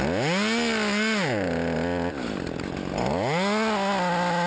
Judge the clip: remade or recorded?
recorded